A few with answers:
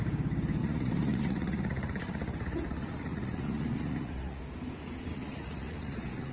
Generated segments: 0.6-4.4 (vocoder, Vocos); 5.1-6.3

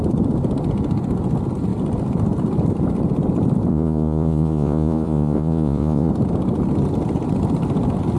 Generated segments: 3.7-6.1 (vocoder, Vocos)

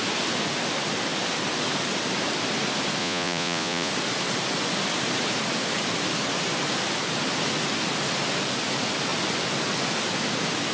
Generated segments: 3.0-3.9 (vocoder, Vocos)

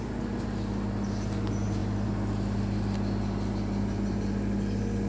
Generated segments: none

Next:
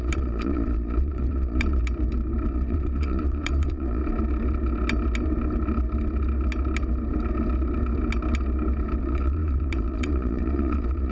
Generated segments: 0.0-1.8 (vocoder, Vocos); 2.5-4.0; 9.0-11.1